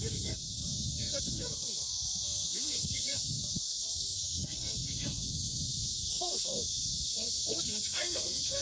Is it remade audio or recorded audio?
remade